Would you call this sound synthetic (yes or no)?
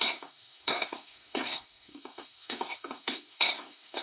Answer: yes